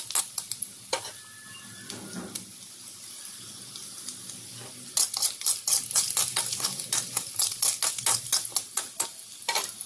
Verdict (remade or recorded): recorded